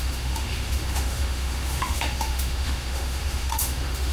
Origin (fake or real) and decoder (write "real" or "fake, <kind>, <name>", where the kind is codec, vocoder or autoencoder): fake, autoencoder, DAC-VAE